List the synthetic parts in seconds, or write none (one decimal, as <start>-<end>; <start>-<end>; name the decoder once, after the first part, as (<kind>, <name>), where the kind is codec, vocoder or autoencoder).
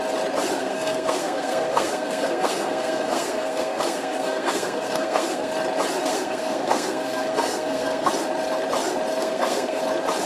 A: 0.6-5.5 (codec, SNAC); 6.0-8.1; 9.2-9.8